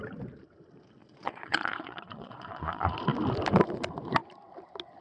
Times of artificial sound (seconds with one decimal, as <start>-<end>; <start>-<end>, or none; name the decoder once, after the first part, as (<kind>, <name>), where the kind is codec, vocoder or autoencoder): 1.0-3.0 (vocoder, Vocos)